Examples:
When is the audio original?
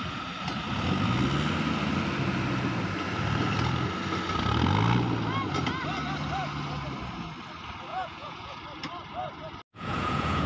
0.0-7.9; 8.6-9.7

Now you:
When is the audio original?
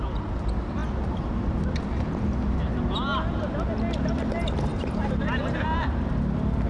0.0-4.7; 6.1-6.7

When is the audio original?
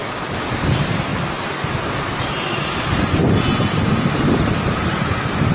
0.0-0.7; 1.1-2.8; 3.2-3.9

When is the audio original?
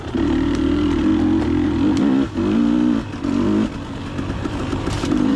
1.1-4.3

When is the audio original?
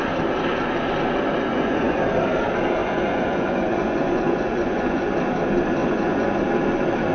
0.0-1.5; 2.0-2.8; 5.1-5.8; 6.4-7.1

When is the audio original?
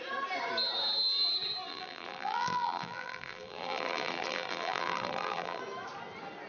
0.0-1.7; 5.6-6.5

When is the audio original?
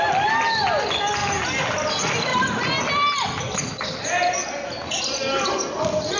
0.0-6.2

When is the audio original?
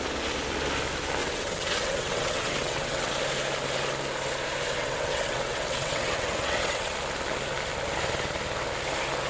0.0-1.2; 3.1-4.8; 6.9-9.3